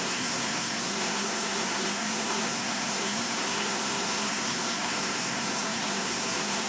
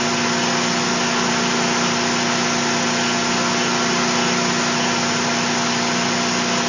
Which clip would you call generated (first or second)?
first